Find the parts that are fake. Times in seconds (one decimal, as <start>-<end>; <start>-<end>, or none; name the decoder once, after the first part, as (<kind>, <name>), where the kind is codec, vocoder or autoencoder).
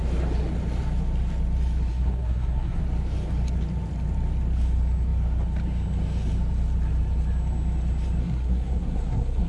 1.9-2.8 (codec, SNAC); 8.2-9.5